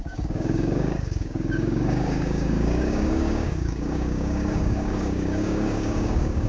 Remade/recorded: remade